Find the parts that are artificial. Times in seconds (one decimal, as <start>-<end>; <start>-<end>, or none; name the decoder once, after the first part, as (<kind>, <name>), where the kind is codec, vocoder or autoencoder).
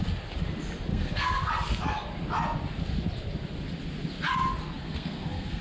0.9-1.5 (codec, SNAC); 4.8-5.6